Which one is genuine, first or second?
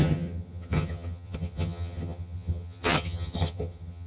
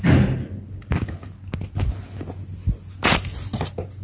second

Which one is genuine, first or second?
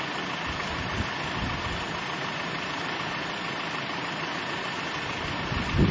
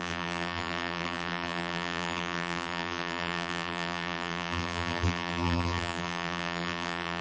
first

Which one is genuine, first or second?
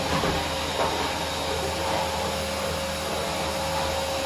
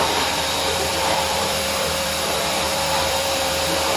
first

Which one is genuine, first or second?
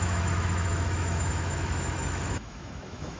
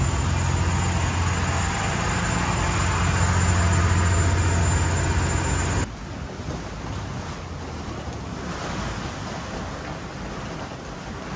second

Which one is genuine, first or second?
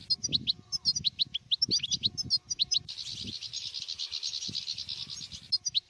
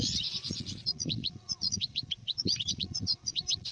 first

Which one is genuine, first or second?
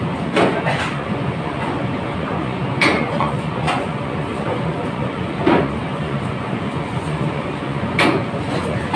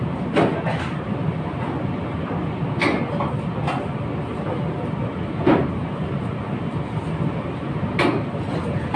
second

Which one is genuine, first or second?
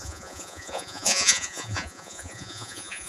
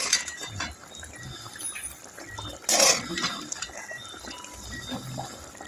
second